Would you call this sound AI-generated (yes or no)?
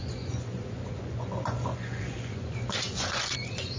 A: yes